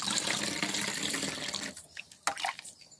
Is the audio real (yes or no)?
yes